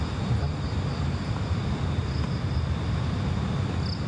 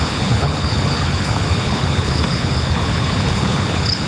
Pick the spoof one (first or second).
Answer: second